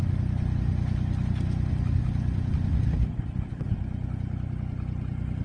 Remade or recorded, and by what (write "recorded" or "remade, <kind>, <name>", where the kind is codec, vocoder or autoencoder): recorded